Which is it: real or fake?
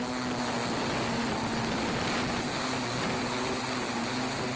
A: real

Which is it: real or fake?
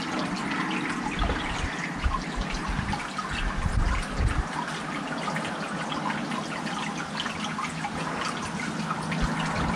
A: real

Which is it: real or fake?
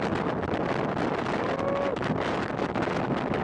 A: real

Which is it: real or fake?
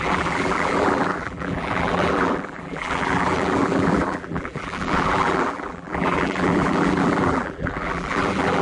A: fake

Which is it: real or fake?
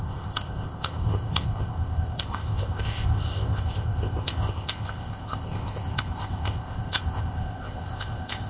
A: fake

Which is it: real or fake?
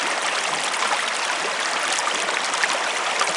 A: real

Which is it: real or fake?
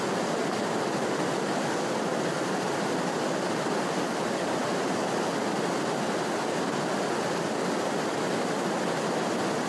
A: real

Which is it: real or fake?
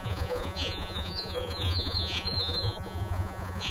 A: fake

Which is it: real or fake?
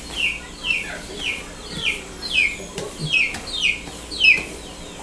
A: real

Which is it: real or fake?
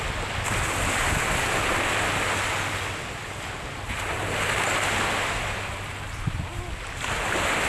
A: real